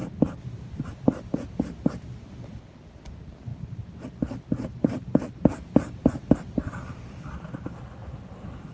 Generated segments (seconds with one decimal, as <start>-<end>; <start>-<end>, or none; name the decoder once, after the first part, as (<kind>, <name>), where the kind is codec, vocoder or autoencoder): 8.0-8.7 (vocoder, BigVGAN v2)